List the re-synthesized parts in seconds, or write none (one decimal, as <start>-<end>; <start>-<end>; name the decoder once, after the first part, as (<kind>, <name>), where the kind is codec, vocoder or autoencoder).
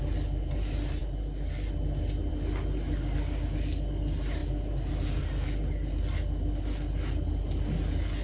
none